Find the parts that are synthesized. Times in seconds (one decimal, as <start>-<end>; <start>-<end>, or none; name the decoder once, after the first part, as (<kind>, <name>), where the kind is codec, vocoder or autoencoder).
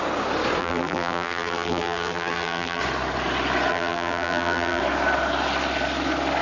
0.6-2.8 (vocoder, BigVGAN v2); 3.7-4.8